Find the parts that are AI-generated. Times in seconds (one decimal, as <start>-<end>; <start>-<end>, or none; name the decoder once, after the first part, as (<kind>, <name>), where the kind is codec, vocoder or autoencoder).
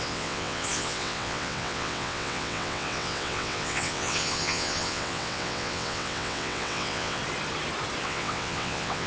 0.0-7.2 (vocoder, WaveNeXt); 8.0-9.1